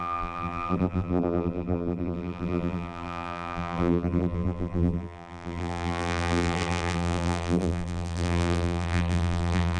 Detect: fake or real fake